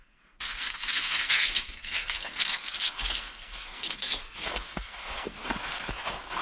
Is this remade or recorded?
remade